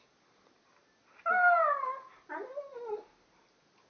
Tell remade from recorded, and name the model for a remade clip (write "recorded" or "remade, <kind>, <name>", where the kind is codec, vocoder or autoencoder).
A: recorded